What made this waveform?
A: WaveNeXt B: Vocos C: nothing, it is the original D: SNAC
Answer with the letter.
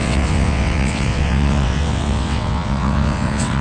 A